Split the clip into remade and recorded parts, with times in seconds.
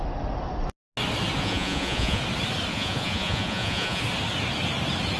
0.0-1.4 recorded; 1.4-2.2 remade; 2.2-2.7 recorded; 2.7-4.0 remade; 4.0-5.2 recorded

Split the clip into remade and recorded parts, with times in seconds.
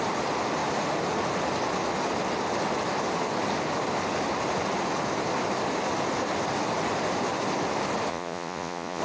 0.0-8.1 recorded; 8.1-9.0 remade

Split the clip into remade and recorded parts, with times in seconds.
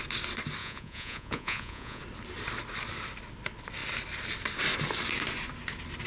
0.0-0.6 recorded; 0.6-2.0 remade; 2.0-6.1 recorded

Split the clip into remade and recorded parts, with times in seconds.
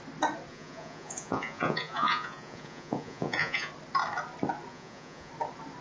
0.0-0.5 recorded; 0.5-3.7 remade; 3.7-4.7 recorded; 4.7-5.3 remade; 5.3-5.8 recorded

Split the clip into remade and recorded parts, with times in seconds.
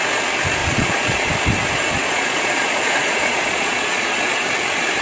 0.0-0.6 recorded; 0.6-1.3 remade; 1.3-2.0 recorded; 2.0-4.1 remade; 4.1-5.0 recorded